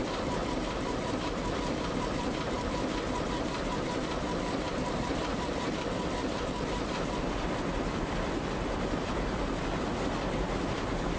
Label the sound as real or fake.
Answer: fake